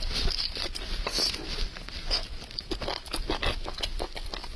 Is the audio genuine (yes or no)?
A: yes